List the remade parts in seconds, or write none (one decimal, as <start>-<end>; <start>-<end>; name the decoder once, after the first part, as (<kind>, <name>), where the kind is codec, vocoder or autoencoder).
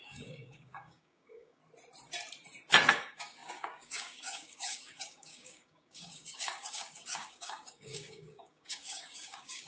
0.0-1.6 (codec, DAC); 2.9-9.7